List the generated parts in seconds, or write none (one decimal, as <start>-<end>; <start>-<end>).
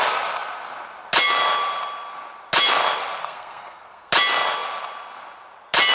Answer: 3.2-4.1